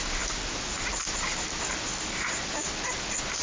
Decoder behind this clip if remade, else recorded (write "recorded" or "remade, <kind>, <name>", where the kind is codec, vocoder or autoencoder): recorded